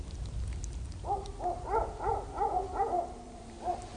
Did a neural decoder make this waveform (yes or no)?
no